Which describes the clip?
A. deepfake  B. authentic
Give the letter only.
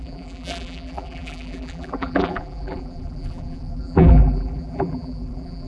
A